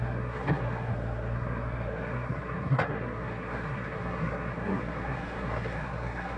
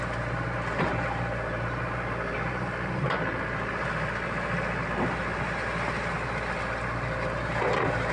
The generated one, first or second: first